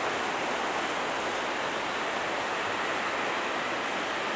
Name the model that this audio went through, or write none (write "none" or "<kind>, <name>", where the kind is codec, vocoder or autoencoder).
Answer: none